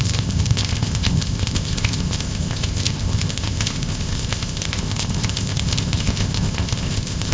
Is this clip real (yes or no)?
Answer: no